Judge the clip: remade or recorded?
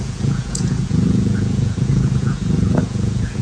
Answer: remade